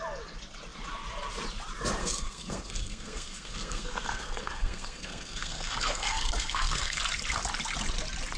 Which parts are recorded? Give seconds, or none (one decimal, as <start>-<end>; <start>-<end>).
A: 0.0-2.0; 7.0-8.4